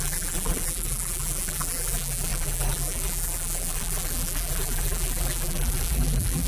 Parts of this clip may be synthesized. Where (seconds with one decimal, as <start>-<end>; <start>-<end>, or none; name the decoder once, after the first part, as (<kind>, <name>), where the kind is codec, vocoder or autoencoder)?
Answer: 0.0-6.5 (vocoder, BigVGAN v2)